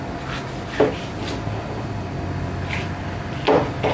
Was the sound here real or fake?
real